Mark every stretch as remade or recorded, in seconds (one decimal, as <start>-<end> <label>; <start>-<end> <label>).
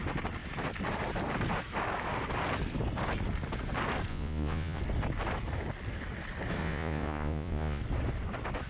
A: 0.0-4.1 recorded; 4.1-4.8 remade; 4.8-6.6 recorded; 6.6-7.8 remade; 7.8-8.7 recorded